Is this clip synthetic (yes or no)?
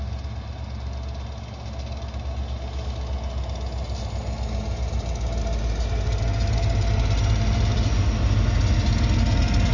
no